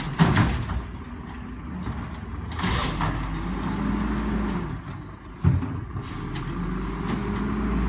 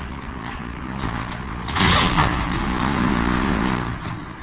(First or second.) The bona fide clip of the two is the first